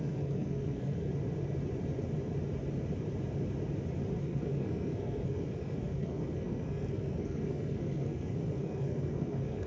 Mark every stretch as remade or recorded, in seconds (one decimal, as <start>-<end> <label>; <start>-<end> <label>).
0.0-1.1 remade; 1.1-4.2 recorded; 4.2-9.7 remade